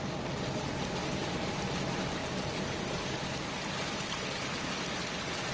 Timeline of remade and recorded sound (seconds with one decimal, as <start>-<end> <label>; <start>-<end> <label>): 0.0-1.0 recorded; 1.0-1.5 remade; 1.5-2.2 recorded; 2.2-3.0 remade; 3.0-5.5 recorded